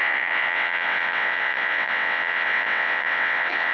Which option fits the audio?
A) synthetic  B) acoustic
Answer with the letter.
A